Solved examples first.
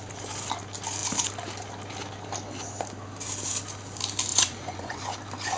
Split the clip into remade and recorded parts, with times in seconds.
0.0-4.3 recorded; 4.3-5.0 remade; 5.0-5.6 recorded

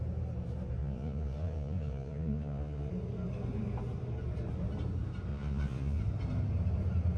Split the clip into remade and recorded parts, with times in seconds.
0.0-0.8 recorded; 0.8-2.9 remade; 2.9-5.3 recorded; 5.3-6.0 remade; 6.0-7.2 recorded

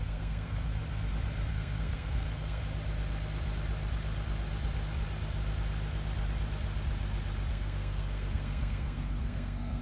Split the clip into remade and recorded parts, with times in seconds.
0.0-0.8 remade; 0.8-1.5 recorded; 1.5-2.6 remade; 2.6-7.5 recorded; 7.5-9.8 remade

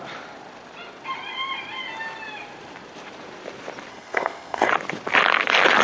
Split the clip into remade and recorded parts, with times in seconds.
0.0-3.9 recorded; 3.9-4.7 remade; 4.7-5.8 recorded